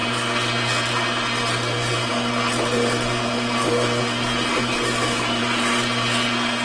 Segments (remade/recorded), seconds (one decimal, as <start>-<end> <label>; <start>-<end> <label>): 0.0-4.5 recorded; 4.5-5.4 remade; 5.4-6.6 recorded